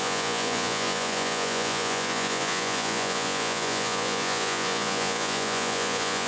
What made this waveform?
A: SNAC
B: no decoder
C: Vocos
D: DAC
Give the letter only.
C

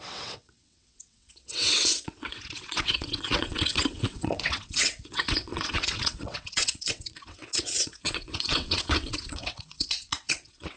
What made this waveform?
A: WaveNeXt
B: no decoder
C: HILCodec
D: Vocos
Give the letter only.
A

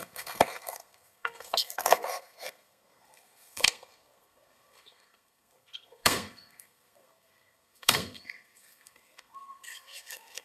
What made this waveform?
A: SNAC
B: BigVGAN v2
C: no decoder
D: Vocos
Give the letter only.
A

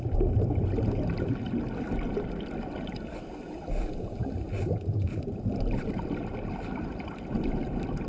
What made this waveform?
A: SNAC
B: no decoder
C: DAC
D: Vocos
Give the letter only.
B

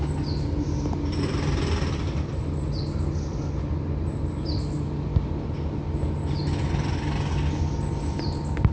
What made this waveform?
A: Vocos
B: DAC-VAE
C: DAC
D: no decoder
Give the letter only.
D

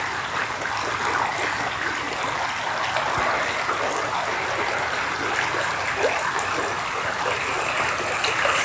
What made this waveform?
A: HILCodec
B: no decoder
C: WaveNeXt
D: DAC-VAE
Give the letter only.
B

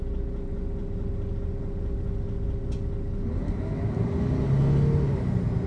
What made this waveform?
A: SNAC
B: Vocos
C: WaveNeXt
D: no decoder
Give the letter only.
D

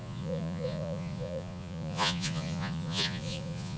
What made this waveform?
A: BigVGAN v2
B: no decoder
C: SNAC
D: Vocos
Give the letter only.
D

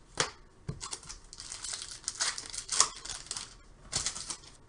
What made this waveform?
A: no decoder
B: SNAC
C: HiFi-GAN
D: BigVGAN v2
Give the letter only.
A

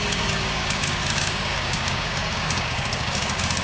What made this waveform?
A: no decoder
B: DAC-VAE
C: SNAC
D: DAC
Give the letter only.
D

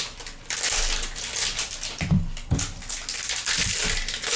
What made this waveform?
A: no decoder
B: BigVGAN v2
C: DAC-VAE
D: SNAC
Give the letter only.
A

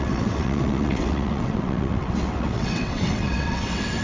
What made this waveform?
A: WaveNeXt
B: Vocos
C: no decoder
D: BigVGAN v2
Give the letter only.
A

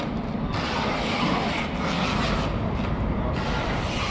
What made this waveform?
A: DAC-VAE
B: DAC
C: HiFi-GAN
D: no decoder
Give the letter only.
D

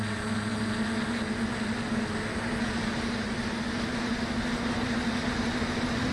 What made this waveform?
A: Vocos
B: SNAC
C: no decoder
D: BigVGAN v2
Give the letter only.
C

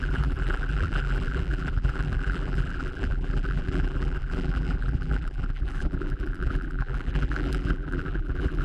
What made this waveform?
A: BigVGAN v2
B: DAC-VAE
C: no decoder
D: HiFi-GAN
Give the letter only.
A